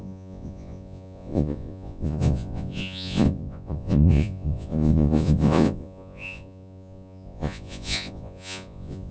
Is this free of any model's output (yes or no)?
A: no